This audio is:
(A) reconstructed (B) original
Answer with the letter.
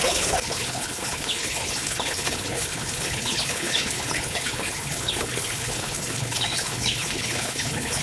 A